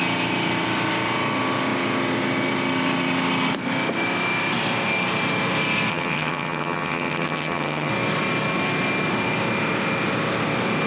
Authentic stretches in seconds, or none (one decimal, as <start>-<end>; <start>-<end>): 0.0-5.9; 7.9-10.9